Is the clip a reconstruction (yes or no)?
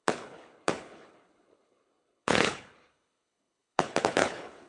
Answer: yes